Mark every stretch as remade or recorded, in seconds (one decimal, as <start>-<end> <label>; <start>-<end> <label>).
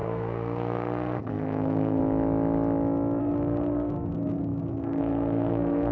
0.0-2.0 remade; 2.0-3.2 recorded; 3.2-5.9 remade